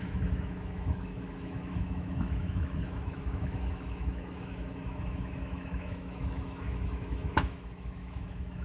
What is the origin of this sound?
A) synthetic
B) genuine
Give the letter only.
A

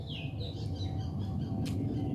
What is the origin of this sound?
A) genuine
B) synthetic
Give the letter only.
A